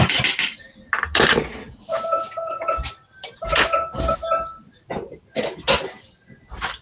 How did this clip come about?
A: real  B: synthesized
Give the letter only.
A